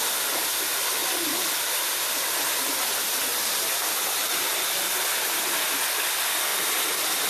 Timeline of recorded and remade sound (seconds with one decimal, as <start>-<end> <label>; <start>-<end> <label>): 0.0-7.3 recorded